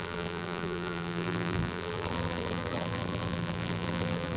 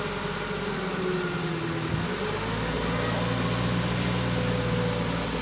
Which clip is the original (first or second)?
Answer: second